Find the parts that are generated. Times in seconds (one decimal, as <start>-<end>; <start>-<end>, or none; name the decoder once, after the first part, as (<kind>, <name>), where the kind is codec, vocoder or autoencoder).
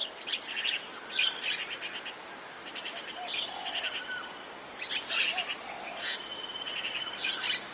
2.2-5.0 (vocoder, BigVGAN v2)